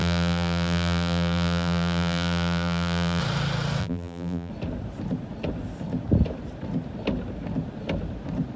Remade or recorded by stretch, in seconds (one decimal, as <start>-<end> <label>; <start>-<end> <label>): 0.0-3.2 remade; 3.2-3.8 recorded; 3.8-4.5 remade; 4.5-8.6 recorded